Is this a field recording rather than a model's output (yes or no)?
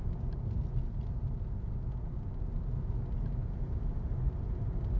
yes